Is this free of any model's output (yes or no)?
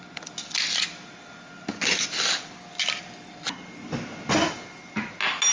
yes